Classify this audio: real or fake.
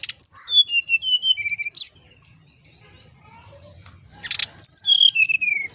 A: real